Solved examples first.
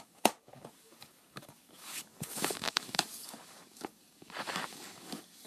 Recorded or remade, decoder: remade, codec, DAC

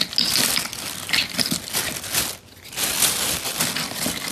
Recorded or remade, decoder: recorded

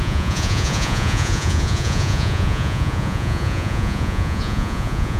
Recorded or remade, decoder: remade, vocoder, Vocos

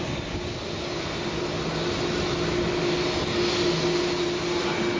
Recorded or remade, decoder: recorded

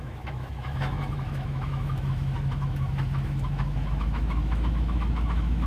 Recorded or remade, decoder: remade, autoencoder, DAC-VAE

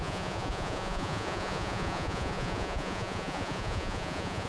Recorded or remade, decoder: remade, vocoder, Vocos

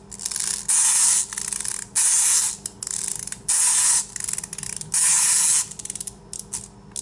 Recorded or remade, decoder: recorded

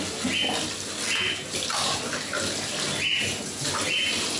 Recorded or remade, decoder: recorded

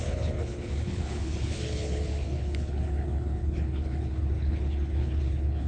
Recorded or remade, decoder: remade, codec, HILCodec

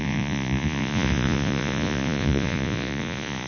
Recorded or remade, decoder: remade, vocoder, Vocos